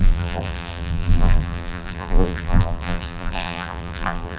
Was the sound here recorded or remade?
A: remade